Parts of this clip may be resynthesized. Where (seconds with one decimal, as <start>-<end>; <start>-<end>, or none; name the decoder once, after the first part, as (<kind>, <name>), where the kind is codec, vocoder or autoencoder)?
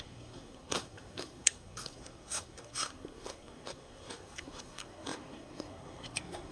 0.0-6.5 (codec, SNAC)